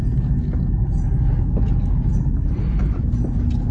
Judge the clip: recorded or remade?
recorded